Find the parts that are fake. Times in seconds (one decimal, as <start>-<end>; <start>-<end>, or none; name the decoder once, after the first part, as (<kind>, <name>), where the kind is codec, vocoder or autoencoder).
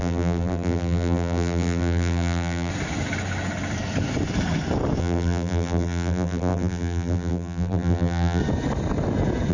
0.0-2.7 (vocoder, BigVGAN v2); 5.0-8.4